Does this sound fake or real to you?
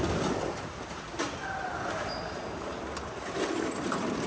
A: real